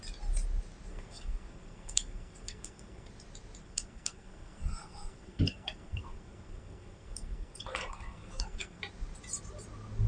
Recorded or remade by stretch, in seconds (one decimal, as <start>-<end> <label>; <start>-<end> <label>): 0.0-0.9 recorded; 0.9-3.1 remade; 3.1-3.6 recorded; 3.6-8.8 remade; 8.8-10.1 recorded

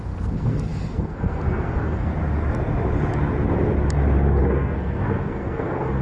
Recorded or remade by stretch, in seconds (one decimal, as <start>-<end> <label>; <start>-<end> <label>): 0.0-2.1 remade; 2.1-4.4 recorded; 4.4-6.0 remade

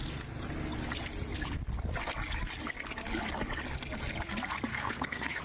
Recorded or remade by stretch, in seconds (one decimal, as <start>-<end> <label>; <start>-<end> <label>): 0.0-4.7 recorded; 4.7-5.4 remade

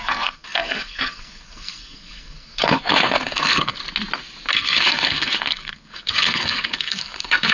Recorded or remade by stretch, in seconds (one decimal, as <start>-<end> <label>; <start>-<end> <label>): 0.0-3.8 remade; 3.8-4.5 recorded; 4.5-7.5 remade

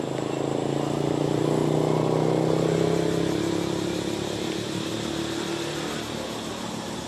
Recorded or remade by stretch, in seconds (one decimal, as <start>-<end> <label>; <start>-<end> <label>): 0.0-7.1 recorded

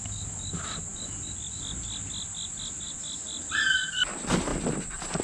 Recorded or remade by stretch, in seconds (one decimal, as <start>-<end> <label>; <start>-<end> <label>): 0.0-5.2 recorded

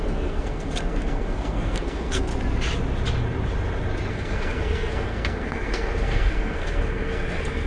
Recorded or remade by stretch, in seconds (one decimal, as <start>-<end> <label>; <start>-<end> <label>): 0.0-2.3 remade; 2.3-4.1 recorded; 4.1-7.7 remade